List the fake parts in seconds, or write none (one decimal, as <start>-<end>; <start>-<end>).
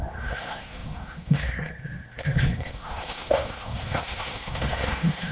0.0-5.3